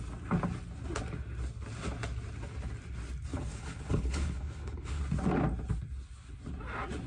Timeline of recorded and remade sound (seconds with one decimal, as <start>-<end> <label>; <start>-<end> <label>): 0.0-3.3 recorded; 3.3-5.0 remade; 5.0-7.1 recorded